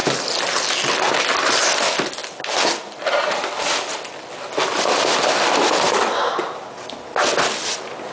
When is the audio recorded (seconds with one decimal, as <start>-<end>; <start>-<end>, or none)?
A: 0.0-8.1